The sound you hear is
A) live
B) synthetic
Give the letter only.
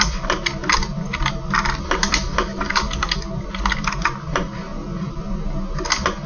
A